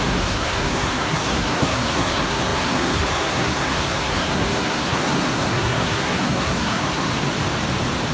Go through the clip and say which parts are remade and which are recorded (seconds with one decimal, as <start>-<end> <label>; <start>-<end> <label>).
0.0-7.1 remade; 7.1-8.1 recorded